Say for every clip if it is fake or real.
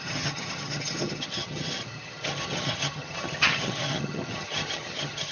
fake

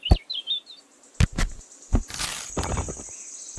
real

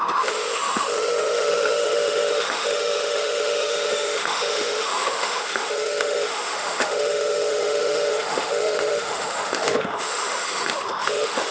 fake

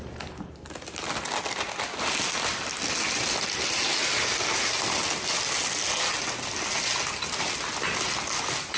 real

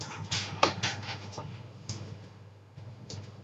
fake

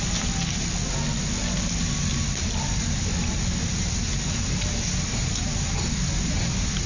real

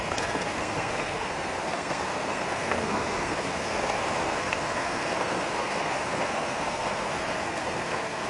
fake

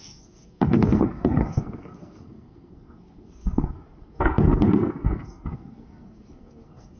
fake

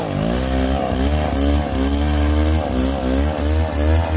real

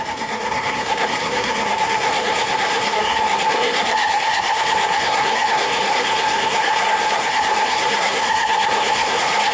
fake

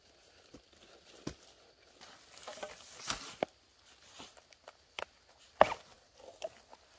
real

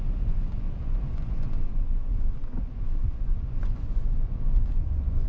fake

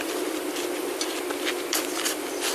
real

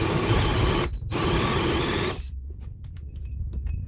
real